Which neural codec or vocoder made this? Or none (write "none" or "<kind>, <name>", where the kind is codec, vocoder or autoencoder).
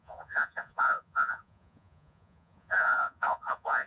vocoder, Vocos